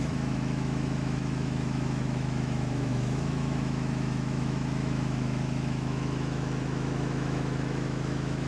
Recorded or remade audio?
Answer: remade